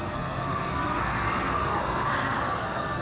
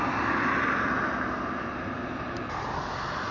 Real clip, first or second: second